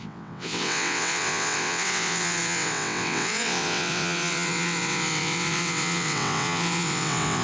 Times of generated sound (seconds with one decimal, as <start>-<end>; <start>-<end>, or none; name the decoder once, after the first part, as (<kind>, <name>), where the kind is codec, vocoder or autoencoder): 0.0-7.4 (vocoder, WaveNeXt)

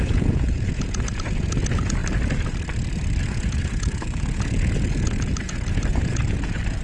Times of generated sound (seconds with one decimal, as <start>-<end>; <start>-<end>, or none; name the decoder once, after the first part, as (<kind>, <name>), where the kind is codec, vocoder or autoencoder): 0.0-2.0 (vocoder, Vocos); 3.2-6.8